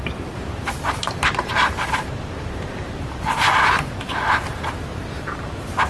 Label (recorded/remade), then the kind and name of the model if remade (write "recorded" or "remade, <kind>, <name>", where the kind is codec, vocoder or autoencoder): remade, vocoder, BigVGAN v2